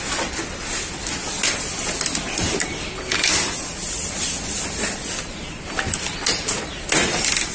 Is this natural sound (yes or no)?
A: yes